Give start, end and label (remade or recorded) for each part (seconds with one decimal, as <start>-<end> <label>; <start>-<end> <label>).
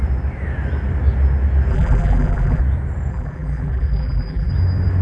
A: 0.0-1.7 recorded; 1.7-2.6 remade; 2.6-3.1 recorded; 3.1-4.5 remade; 4.5-5.0 recorded